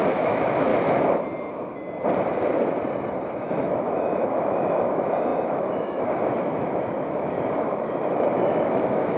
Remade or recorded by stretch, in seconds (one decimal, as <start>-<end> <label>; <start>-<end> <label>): 0.0-0.7 remade; 0.7-3.4 recorded; 3.4-9.2 remade